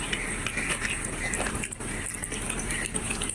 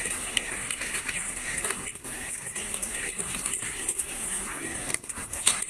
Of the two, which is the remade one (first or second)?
second